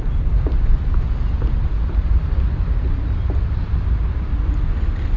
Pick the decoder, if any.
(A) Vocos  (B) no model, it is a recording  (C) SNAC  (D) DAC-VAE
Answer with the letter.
B